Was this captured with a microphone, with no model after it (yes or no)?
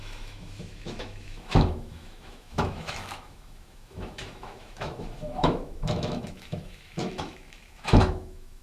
no